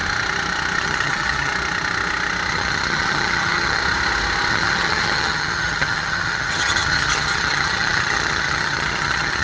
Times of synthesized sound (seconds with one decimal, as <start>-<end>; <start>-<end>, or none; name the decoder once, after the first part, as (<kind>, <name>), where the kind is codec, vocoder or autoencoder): 0.8-1.5 (vocoder, HiFi-GAN); 2.5-3.8; 4.5-9.4